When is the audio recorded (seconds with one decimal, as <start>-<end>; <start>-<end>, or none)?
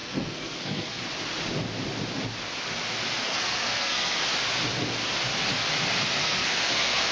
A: 1.0-3.3; 4.2-6.2